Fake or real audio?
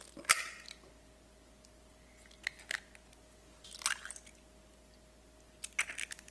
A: real